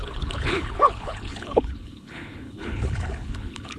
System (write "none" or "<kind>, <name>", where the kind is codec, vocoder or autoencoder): codec, HILCodec